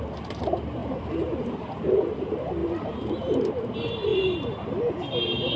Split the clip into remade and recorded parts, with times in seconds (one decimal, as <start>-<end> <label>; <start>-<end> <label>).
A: 0.0-0.8 recorded; 0.8-2.1 remade; 2.1-2.6 recorded; 2.6-3.5 remade; 3.5-5.6 recorded